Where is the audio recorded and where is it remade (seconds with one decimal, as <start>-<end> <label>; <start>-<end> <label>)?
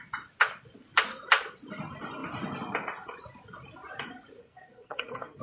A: 0.0-4.4 recorded; 4.4-5.4 remade